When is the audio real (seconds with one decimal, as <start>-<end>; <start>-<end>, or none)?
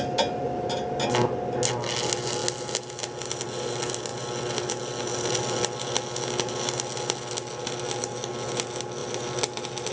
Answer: 0.0-9.9